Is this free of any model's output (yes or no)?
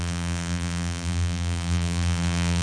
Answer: no